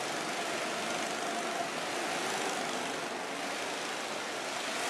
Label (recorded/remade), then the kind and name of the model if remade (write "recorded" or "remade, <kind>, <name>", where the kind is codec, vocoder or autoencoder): recorded